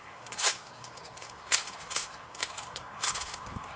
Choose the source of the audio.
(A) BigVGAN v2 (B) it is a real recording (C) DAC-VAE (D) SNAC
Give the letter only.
D